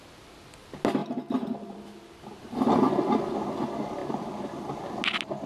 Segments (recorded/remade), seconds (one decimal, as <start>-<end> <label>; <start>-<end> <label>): 0.0-1.0 recorded; 1.0-1.8 remade; 1.8-4.0 recorded; 4.0-4.8 remade; 4.8-5.5 recorded